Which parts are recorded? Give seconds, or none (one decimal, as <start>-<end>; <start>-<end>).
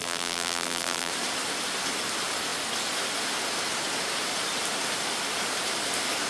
1.1-6.3